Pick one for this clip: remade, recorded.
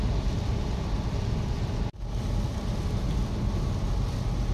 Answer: recorded